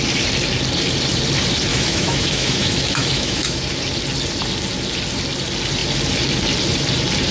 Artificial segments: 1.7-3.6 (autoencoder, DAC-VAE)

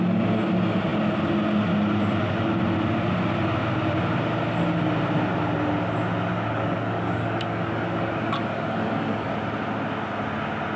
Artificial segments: 6.3-9.3 (codec, DAC)

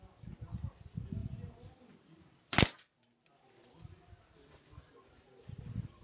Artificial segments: none

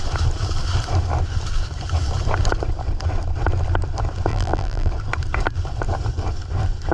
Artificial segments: 4.3-4.9 (vocoder, BigVGAN v2)

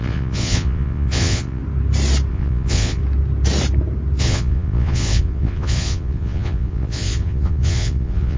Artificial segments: 0.0-1.6 (vocoder, Vocos); 2.3-3.0; 4.2-8.4

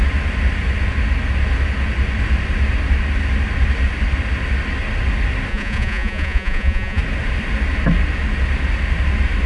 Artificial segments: 5.5-7.0 (vocoder, Vocos)

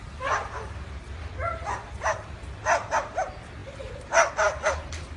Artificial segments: 0.4-1.0 (vocoder, BigVGAN v2); 3.6-4.3

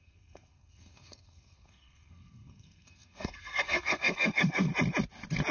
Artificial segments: 0.0-4.7 (codec, SNAC)